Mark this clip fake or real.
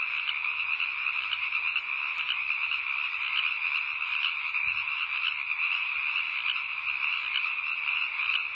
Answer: real